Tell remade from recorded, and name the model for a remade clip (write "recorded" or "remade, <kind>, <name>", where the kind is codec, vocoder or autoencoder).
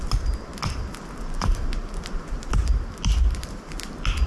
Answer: recorded